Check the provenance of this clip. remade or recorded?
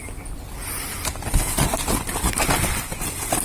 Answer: recorded